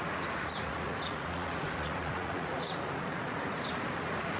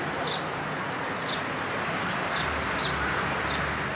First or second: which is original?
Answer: second